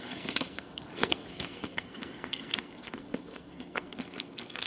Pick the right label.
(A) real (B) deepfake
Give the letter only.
B